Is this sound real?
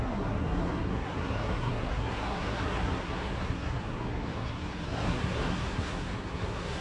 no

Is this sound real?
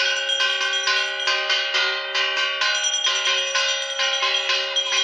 yes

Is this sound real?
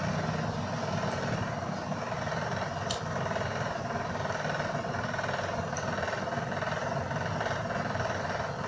yes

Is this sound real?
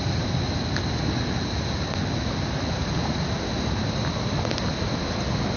yes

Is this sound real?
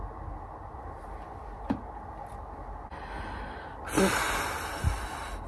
yes